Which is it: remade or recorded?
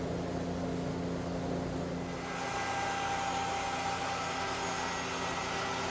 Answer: recorded